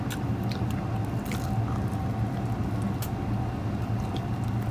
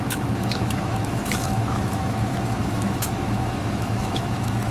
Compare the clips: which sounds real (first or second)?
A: first